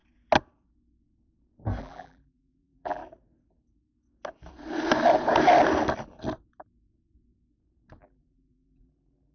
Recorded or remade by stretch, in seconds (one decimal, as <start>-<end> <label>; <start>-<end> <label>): 0.0-1.8 recorded; 1.8-3.0 remade; 3.0-8.0 recorded; 8.0-9.3 remade